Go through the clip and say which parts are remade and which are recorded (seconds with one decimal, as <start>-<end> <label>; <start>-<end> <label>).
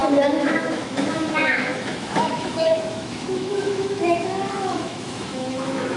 0.0-6.0 remade